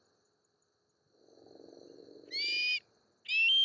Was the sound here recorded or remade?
recorded